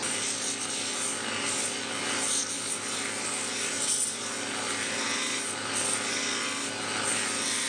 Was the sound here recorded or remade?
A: recorded